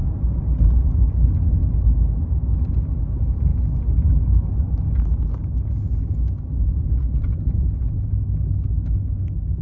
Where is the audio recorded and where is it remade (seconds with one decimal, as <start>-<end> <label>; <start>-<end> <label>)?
0.0-1.0 remade; 1.0-9.6 recorded